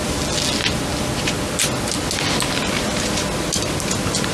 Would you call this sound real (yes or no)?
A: yes